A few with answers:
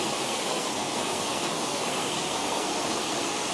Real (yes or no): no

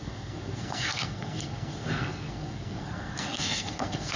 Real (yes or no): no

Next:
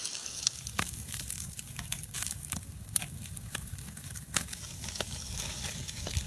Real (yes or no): no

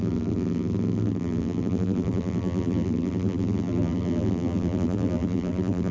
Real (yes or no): no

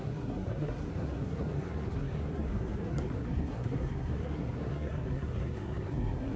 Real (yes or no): no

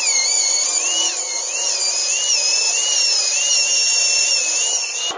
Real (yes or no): yes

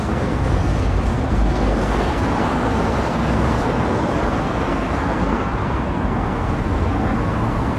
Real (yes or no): no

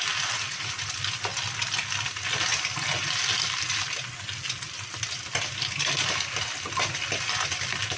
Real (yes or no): yes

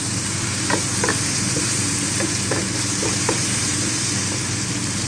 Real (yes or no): no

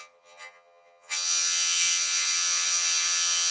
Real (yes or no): no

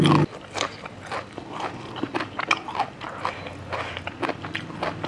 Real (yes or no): yes